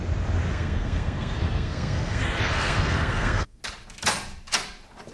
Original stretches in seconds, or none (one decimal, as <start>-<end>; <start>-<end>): 0.0-0.5; 3.6-5.1